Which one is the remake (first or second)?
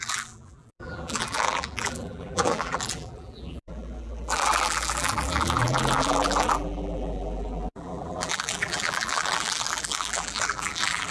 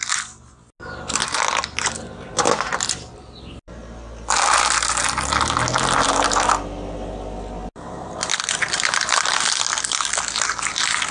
first